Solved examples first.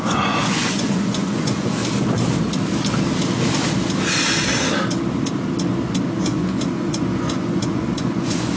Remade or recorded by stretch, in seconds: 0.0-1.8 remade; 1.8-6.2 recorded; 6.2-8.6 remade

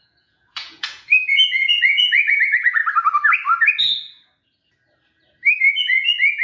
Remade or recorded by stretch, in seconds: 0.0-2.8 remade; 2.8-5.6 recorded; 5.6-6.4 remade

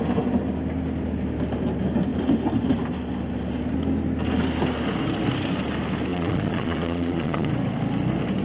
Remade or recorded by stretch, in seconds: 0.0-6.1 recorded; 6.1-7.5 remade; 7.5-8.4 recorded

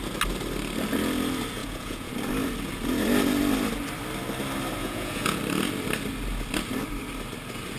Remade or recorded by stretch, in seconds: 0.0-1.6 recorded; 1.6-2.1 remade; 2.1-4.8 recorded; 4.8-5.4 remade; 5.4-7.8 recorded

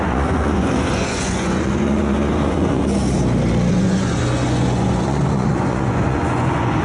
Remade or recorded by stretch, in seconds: 0.0-2.9 remade; 2.9-3.7 recorded; 3.7-6.8 remade

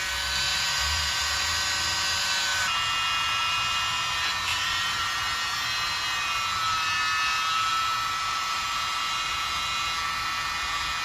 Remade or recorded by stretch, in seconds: 0.0-0.5 recorded; 0.5-1.5 remade; 1.5-4.5 recorded; 4.5-5.0 remade; 5.0-7.7 recorded; 7.7-9.5 remade; 9.5-11.0 recorded